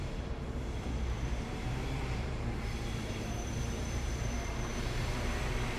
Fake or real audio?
fake